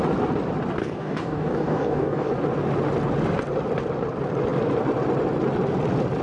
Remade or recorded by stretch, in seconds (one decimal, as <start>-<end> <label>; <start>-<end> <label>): 0.0-0.8 recorded; 0.8-2.3 remade; 2.3-6.2 recorded